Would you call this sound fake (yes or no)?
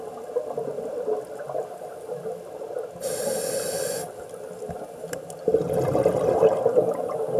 no